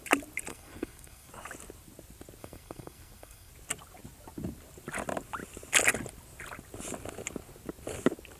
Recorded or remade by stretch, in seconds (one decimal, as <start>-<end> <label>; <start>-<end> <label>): 0.0-0.5 recorded; 0.5-1.3 remade; 1.3-2.4 recorded; 2.4-3.5 remade; 3.5-8.4 recorded